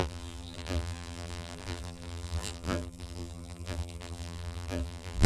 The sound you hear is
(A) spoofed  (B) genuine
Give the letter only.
A